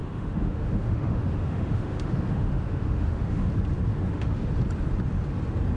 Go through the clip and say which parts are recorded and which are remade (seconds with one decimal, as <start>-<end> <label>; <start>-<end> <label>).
0.0-3.5 remade; 3.5-3.9 recorded; 3.9-4.5 remade; 4.5-5.8 recorded